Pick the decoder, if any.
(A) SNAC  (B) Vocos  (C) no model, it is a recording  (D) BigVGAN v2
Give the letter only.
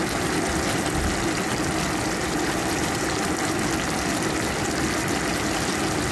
C